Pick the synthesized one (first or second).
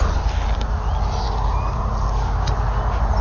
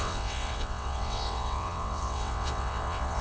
second